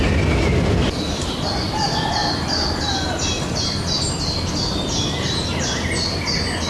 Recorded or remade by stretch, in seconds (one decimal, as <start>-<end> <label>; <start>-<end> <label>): 0.0-6.7 recorded

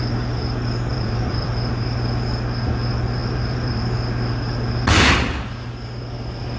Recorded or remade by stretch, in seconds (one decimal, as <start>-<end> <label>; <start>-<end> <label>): 0.0-0.9 recorded; 0.9-1.5 remade; 1.5-3.2 recorded; 3.2-3.8 remade; 3.8-6.6 recorded

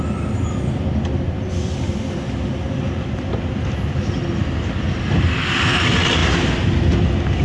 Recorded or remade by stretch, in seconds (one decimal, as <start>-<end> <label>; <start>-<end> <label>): 0.0-7.4 recorded

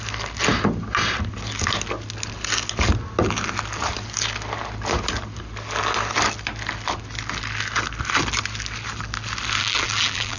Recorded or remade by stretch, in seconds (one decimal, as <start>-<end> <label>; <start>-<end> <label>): 0.0-9.6 recorded; 9.6-10.4 remade

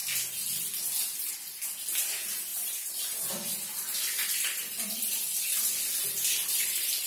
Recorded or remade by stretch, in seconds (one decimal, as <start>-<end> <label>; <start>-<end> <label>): 0.0-2.5 recorded; 2.5-7.1 remade

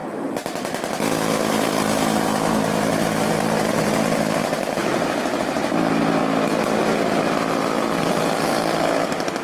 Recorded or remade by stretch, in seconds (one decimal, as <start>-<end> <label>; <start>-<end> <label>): 0.0-4.8 remade; 4.8-5.4 recorded; 5.4-6.2 remade; 6.2-8.1 recorded; 8.1-9.4 remade